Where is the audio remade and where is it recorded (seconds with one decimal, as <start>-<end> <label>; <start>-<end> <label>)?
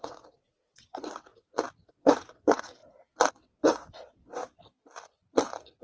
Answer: 0.0-1.3 remade; 1.3-1.9 recorded; 1.9-2.8 remade; 2.8-3.3 recorded; 3.3-4.4 remade; 4.4-5.8 recorded